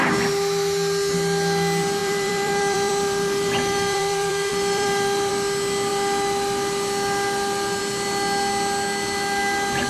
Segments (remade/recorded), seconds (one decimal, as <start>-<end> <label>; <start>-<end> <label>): 0.0-2.0 recorded; 2.0-5.3 remade; 5.3-9.9 recorded